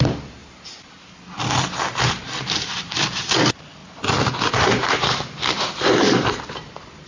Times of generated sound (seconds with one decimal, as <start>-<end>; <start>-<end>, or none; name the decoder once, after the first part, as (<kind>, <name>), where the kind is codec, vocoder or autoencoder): 0.0-0.4 (vocoder, BigVGAN v2); 2.0-3.8; 4.5-7.1